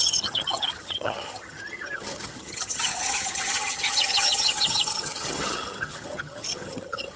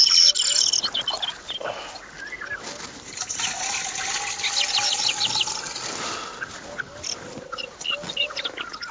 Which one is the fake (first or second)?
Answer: first